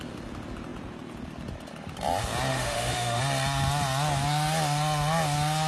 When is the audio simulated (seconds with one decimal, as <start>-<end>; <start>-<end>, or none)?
2.5-3.2